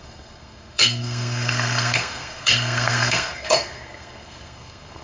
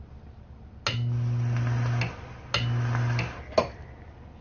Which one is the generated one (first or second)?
first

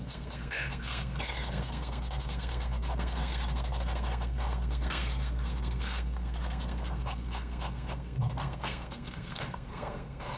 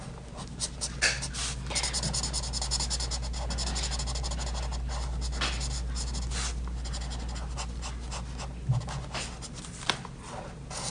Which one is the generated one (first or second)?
first